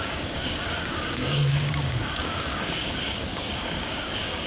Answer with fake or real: fake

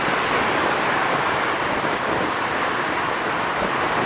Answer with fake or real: real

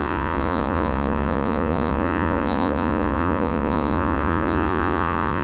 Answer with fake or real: fake